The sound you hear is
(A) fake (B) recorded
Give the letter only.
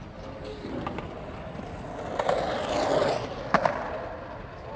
B